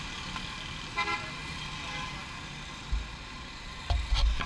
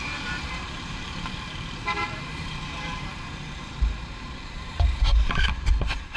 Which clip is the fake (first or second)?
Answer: second